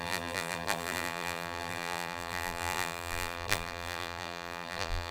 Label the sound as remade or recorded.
remade